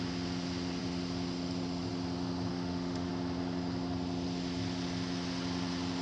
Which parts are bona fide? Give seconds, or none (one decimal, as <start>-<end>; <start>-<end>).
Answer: 0.0-2.5; 3.1-6.0